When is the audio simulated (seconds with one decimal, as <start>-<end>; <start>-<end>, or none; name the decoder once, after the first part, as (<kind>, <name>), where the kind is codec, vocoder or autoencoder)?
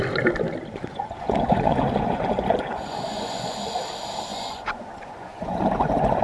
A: 0.9-3.8 (vocoder, Vocos); 4.3-6.2